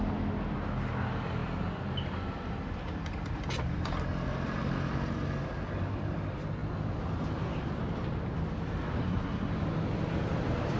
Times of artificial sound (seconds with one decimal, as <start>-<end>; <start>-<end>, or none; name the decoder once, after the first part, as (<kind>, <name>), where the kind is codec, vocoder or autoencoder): 9.0-9.5 (codec, SNAC)